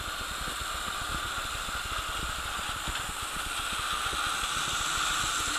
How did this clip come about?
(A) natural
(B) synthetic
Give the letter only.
A